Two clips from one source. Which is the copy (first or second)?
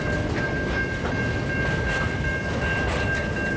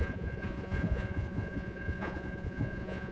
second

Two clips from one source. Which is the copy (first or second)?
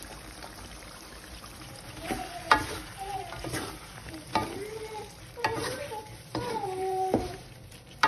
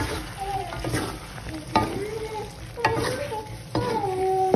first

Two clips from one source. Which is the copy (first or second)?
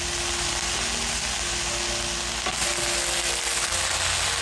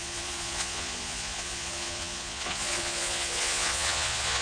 second